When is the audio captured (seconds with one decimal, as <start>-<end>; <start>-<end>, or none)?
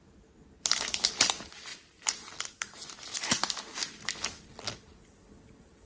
0.0-5.9